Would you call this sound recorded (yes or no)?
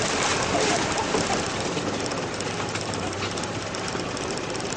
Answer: yes